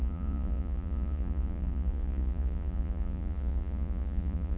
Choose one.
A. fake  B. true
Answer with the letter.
A